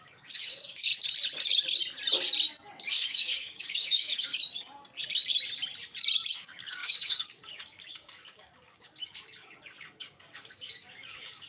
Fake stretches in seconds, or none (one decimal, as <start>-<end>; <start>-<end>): 0.0-0.9; 2.9-4.3; 6.3-11.5